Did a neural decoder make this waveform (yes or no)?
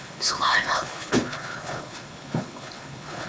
yes